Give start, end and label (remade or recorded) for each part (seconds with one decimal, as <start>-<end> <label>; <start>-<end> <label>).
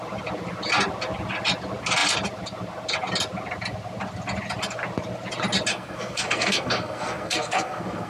0.0-5.7 recorded; 5.7-8.1 remade